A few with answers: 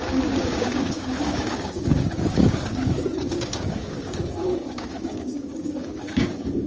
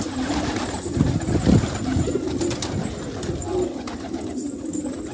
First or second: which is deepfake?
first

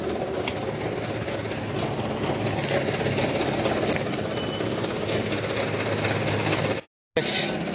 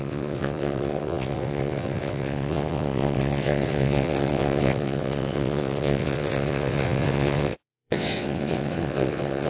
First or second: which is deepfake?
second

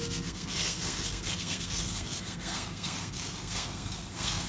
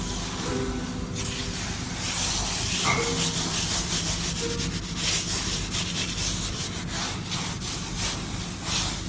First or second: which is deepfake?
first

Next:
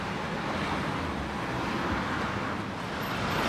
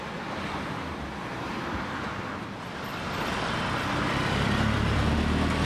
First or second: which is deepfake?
second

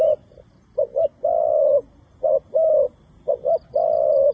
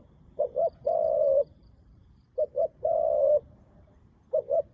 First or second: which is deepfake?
second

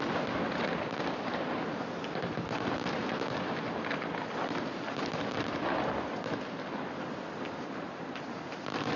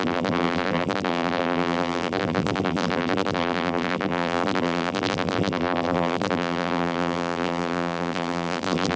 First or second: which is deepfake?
second